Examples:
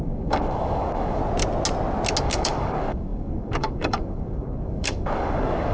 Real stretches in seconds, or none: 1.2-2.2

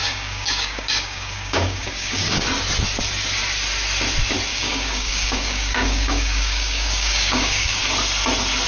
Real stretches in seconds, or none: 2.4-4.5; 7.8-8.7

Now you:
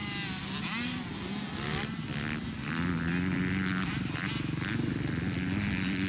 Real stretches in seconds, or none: 0.0-6.1

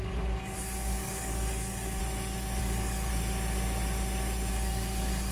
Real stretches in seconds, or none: 2.0-2.6; 3.1-4.5

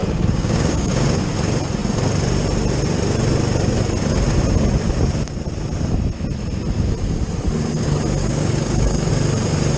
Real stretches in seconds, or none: 1.2-8.2; 9.1-9.8

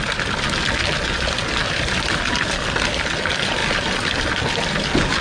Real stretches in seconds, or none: 0.0-5.2

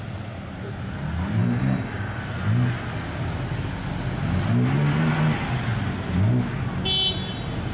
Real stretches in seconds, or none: 0.0-1.4; 2.2-7.7

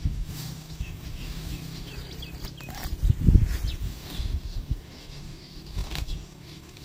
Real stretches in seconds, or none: 1.9-3.8